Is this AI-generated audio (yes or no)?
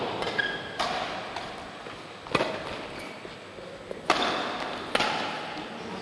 no